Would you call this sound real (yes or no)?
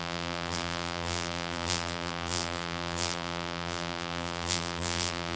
no